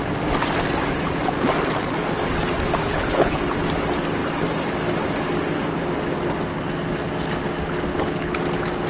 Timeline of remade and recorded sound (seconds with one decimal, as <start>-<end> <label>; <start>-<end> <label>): 0.0-2.8 recorded; 2.8-3.4 remade; 3.4-7.9 recorded; 7.9-8.4 remade; 8.4-8.9 recorded